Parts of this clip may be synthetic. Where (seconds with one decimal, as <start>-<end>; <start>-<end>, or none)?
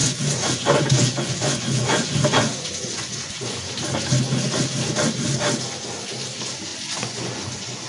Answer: 0.0-3.7; 6.7-7.9